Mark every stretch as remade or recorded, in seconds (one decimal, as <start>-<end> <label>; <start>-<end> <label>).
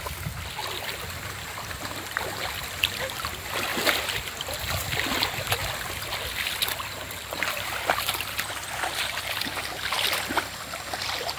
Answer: 0.0-0.6 recorded; 0.6-2.3 remade; 2.3-3.7 recorded; 3.7-4.6 remade; 4.6-5.6 recorded; 5.6-9.1 remade; 9.1-11.4 recorded